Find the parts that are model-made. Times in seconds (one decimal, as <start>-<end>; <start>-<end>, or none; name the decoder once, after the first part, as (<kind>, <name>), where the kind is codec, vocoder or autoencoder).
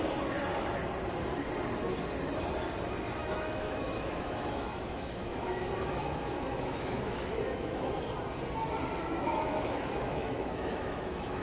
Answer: 3.2-7.9 (autoencoder, DAC-VAE); 9.0-11.4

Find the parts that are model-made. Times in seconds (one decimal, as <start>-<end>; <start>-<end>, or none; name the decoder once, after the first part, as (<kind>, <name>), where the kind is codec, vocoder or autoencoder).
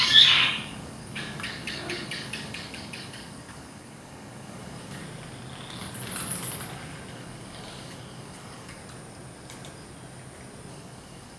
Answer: 0.0-5.0 (codec, DAC); 7.1-8.8; 10.7-11.4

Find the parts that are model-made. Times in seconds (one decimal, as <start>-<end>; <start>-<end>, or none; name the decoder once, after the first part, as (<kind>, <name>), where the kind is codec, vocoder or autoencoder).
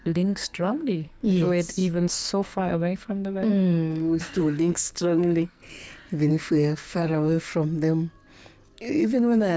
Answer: 0.0-5.8 (codec, SNAC); 6.3-7.5; 9.0-9.6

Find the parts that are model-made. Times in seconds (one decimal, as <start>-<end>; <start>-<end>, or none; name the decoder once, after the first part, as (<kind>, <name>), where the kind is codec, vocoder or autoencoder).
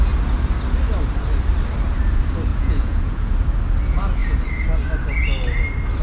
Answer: 2.5-3.3 (vocoder, Vocos)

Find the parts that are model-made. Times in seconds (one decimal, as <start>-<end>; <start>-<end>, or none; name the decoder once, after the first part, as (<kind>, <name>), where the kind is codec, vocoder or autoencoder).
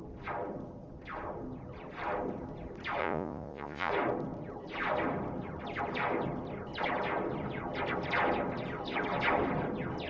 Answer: 3.0-3.9 (vocoder, Vocos)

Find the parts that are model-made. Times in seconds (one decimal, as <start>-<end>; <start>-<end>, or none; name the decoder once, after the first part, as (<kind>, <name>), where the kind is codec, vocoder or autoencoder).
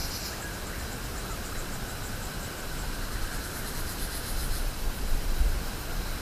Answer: none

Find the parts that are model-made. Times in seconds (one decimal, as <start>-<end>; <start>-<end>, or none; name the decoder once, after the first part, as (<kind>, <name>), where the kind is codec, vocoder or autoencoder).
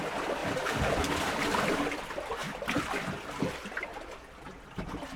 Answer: 0.4-1.0 (vocoder, BigVGAN v2); 2.4-3.4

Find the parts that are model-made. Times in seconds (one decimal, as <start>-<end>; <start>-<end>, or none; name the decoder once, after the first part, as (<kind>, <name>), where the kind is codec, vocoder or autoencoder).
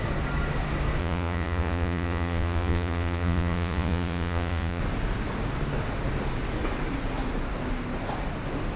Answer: 1.0-4.8 (vocoder, Vocos)